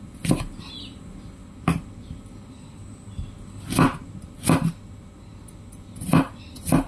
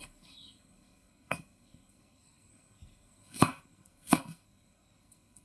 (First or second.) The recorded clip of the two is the first